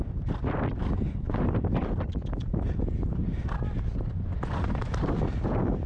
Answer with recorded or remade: recorded